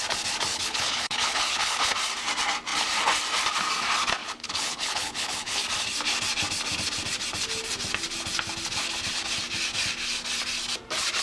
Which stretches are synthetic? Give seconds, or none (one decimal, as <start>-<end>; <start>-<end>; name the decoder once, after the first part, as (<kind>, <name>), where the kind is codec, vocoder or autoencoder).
0.5-1.9 (codec, HILCodec); 4.2-5.6